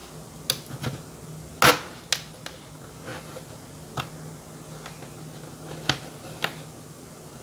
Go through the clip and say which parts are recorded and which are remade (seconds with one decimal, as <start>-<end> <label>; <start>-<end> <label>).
0.0-7.4 recorded